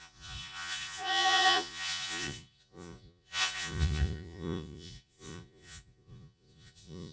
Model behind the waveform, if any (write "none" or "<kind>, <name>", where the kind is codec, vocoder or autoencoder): vocoder, Vocos